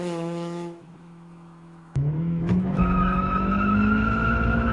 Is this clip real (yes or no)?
no